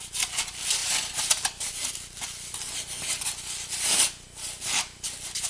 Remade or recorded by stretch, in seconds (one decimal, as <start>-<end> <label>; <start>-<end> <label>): 0.0-5.5 recorded